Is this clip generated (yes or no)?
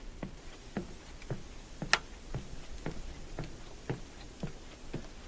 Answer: no